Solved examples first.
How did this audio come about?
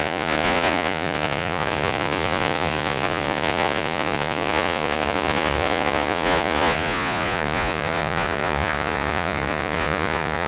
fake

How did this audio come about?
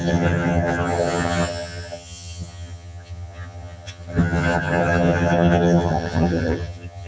fake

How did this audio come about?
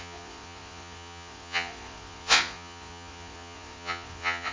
fake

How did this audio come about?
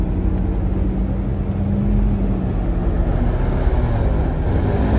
real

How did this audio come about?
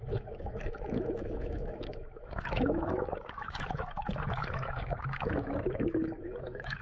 fake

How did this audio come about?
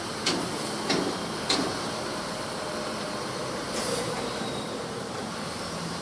fake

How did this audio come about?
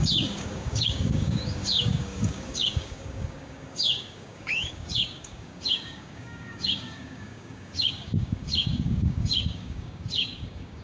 fake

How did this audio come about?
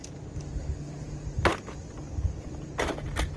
real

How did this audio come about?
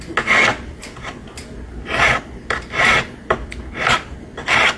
real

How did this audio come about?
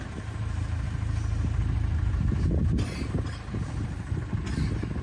real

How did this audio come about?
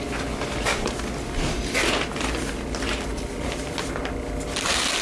real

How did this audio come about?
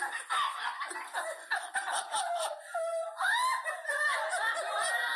real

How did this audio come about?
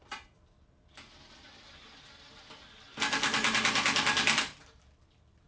real